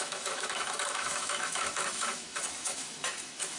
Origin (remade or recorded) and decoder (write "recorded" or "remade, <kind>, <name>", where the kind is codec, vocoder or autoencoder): remade, autoencoder, DAC-VAE